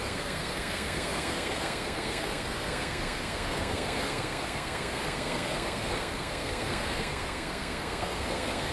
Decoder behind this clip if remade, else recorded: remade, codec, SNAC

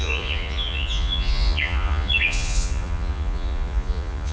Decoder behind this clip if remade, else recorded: remade, vocoder, Vocos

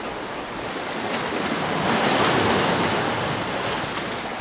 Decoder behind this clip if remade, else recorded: recorded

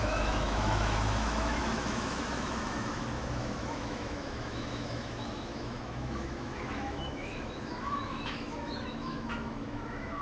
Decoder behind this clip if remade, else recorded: remade, autoencoder, DAC-VAE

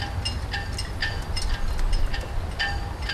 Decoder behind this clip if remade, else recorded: recorded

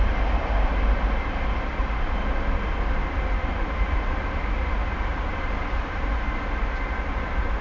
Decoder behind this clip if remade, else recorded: recorded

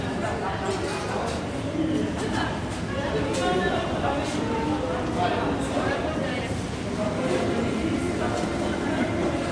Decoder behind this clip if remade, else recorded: recorded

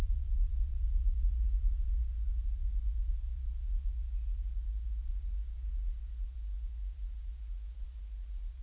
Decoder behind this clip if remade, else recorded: remade, vocoder, Vocos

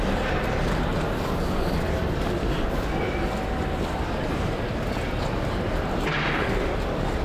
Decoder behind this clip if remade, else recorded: recorded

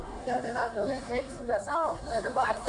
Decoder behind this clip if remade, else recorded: remade, codec, SNAC